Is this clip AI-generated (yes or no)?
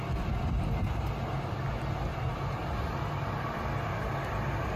no